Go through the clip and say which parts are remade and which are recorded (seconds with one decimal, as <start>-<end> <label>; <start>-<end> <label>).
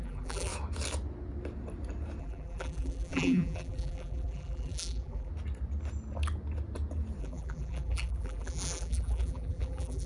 0.0-0.5 remade; 0.5-2.2 recorded; 2.2-5.3 remade; 5.3-7.2 recorded; 7.2-10.1 remade